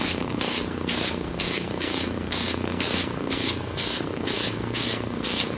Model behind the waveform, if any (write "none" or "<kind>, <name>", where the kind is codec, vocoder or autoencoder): codec, SNAC